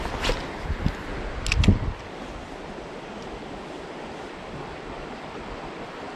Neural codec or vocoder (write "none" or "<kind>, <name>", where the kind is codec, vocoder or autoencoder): none